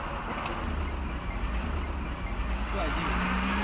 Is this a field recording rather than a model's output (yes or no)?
yes